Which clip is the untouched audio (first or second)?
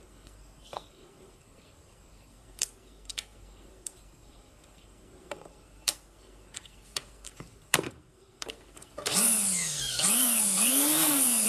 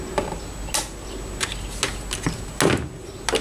second